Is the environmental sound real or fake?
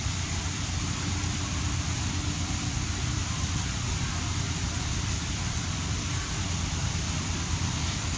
fake